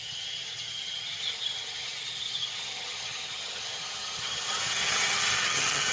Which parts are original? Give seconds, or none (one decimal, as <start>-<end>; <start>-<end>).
none